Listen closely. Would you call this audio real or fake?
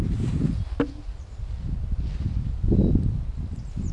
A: real